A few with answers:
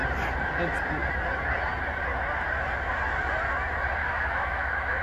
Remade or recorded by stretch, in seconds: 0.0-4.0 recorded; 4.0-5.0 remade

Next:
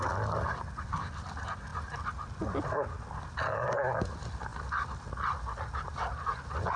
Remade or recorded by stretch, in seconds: 0.0-6.8 recorded

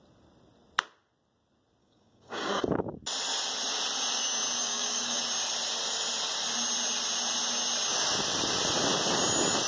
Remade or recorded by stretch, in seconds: 0.0-1.8 recorded; 1.8-2.6 remade; 2.6-4.6 recorded; 4.6-5.2 remade; 5.2-9.7 recorded

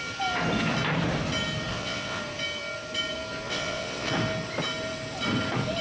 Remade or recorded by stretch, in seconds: 0.0-1.7 recorded; 1.7-2.2 remade; 2.2-3.5 recorded; 3.5-4.1 remade; 4.1-5.8 recorded

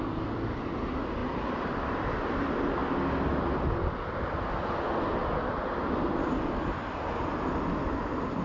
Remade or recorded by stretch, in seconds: 0.0-8.4 recorded

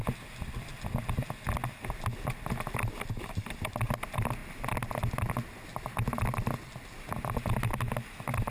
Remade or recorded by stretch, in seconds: 0.0-8.5 recorded

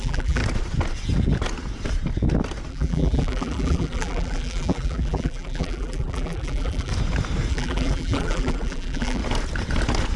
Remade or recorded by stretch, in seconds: 0.0-0.4 remade; 0.4-2.7 recorded; 2.7-6.9 remade; 6.9-7.5 recorded; 7.5-9.2 remade; 9.2-10.2 recorded

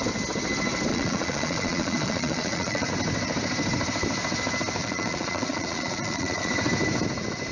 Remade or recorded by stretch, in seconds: 0.0-0.9 recorded; 0.9-2.9 remade; 2.9-4.8 recorded; 4.8-6.5 remade; 6.5-7.5 recorded